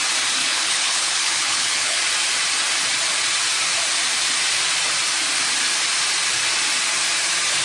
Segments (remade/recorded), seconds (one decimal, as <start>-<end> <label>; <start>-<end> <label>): 0.0-0.4 recorded; 0.4-2.0 remade; 2.0-7.6 recorded